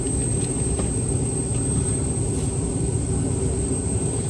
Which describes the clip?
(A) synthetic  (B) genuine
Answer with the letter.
B